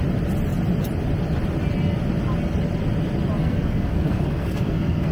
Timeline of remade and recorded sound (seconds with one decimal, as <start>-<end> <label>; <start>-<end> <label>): 0.0-3.4 recorded; 3.4-5.1 remade

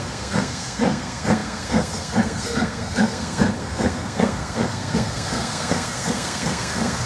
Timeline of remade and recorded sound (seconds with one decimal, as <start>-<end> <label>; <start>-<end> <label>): 0.0-7.1 remade

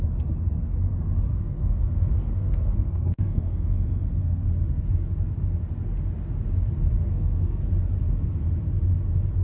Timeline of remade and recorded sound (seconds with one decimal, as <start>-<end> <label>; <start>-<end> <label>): 0.0-1.3 recorded; 1.3-4.5 remade; 4.5-7.0 recorded; 7.0-7.6 remade; 7.6-9.4 recorded